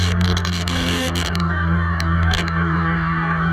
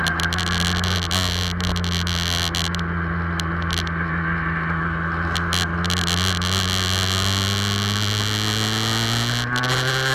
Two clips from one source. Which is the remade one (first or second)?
first